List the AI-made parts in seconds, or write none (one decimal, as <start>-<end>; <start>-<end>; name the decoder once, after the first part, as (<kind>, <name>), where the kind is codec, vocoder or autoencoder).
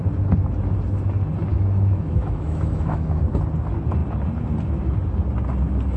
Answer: 1.5-3.2 (autoencoder, DAC-VAE)